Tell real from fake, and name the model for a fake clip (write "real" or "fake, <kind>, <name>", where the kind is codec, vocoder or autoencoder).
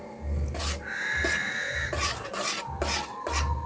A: real